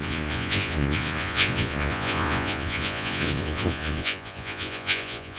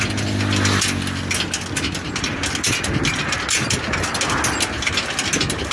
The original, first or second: second